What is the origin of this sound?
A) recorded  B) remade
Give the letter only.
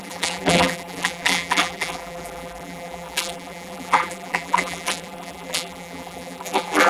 B